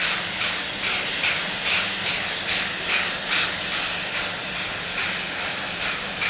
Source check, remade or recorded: recorded